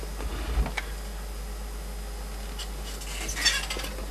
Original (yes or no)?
yes